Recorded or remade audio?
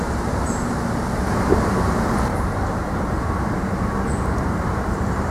remade